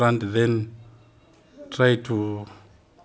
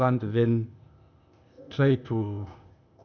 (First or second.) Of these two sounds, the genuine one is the first